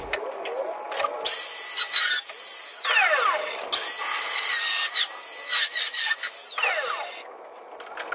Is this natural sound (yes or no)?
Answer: yes